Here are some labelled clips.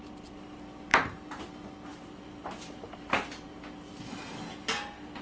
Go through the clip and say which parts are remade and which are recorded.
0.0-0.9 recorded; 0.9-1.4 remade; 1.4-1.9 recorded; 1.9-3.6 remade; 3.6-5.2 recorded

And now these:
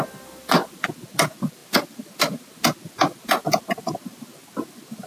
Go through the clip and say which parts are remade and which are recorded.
0.0-5.1 recorded

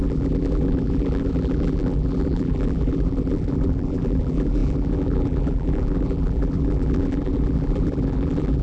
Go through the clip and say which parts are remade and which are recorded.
0.0-8.6 remade

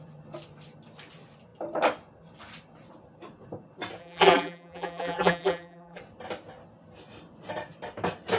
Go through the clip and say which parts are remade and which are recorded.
0.0-4.0 recorded; 4.0-6.0 remade; 6.0-8.4 recorded

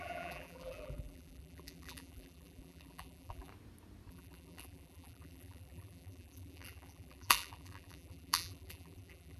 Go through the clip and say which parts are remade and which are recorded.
0.0-3.5 remade; 3.5-4.1 recorded; 4.1-9.4 remade

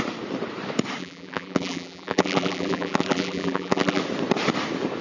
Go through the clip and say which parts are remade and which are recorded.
0.0-1.0 recorded; 1.0-4.0 remade; 4.0-5.0 recorded

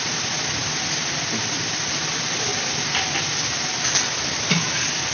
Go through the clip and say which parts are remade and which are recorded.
0.0-5.1 remade